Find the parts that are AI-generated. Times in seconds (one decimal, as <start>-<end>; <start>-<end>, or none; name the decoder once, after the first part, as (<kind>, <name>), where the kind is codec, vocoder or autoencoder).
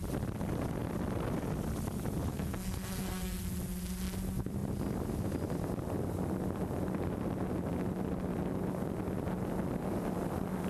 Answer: 2.3-3.4 (codec, SNAC)